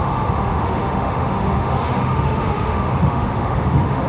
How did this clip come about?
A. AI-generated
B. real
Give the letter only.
A